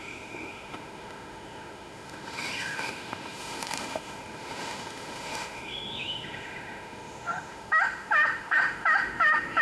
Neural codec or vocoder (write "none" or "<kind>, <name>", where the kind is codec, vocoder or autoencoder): autoencoder, DAC-VAE